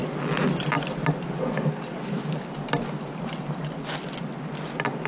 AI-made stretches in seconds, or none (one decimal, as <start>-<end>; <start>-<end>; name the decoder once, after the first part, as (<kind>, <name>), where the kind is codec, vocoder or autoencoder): none